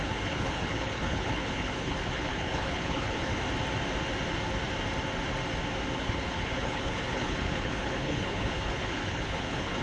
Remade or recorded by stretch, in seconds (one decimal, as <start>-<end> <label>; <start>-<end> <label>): 0.0-3.3 remade; 3.3-6.0 recorded; 6.0-9.8 remade